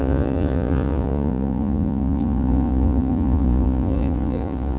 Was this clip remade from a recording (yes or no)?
yes